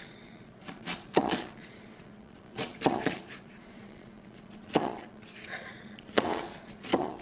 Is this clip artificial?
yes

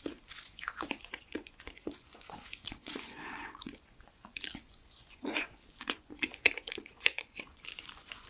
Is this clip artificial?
yes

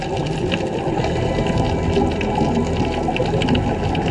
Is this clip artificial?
no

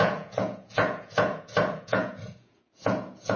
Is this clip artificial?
yes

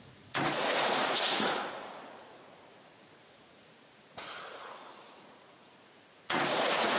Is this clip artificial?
yes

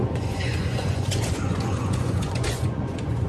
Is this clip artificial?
yes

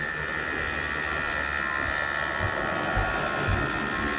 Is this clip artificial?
no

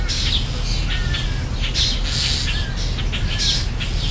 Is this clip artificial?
no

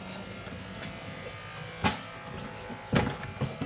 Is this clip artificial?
no